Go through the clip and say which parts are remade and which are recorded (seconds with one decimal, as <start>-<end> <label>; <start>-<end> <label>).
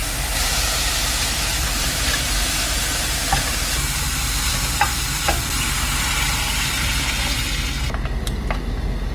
0.0-2.0 remade; 2.0-9.1 recorded